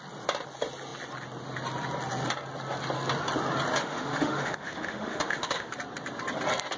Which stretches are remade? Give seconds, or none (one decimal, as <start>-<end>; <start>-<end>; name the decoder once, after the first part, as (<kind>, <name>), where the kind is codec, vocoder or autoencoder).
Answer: 3.8-5.7 (autoencoder, DAC-VAE)